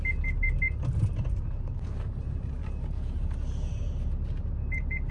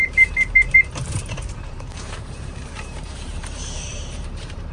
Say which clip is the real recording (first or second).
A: first